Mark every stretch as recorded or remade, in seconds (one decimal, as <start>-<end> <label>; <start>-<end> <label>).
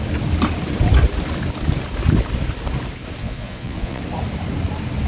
0.0-3.2 recorded; 3.2-4.0 remade; 4.0-5.1 recorded